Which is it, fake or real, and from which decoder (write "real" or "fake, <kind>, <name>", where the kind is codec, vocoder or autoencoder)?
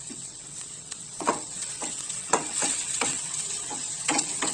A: fake, vocoder, WaveNeXt